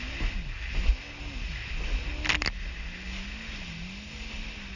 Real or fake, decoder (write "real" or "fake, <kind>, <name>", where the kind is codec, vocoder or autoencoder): real